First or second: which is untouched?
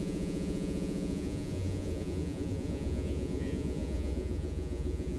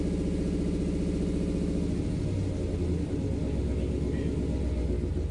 second